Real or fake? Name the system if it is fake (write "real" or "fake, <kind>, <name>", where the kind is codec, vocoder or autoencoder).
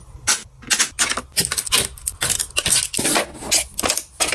real